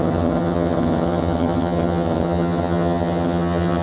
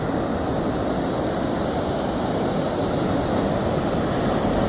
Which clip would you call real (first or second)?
second